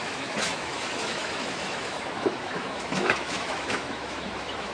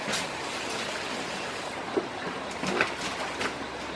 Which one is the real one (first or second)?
second